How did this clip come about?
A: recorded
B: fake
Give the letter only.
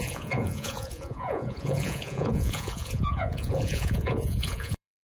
B